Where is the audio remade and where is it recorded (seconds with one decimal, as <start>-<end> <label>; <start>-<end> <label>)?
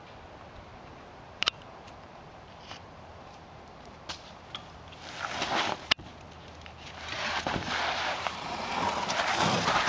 0.0-0.7 recorded; 0.7-4.4 remade; 4.4-7.1 recorded; 7.1-8.7 remade; 8.7-9.9 recorded